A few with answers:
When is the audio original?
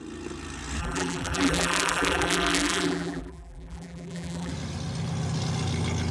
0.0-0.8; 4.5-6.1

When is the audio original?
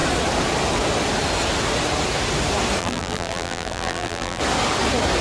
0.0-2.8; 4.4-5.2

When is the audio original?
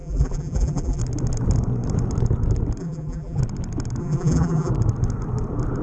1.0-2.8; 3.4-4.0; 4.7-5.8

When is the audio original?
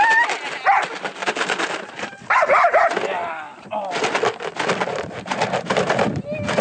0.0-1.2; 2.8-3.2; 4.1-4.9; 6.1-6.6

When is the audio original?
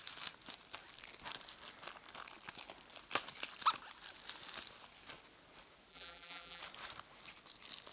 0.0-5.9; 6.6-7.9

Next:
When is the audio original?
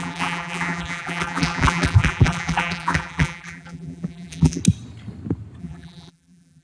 4.6-5.6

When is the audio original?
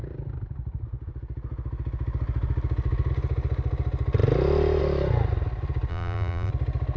0.0-5.9; 6.5-7.0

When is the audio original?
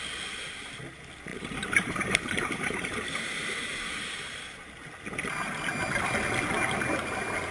0.0-1.3; 4.7-7.5